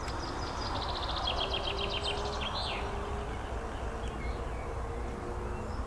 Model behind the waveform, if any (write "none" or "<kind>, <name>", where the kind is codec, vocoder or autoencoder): none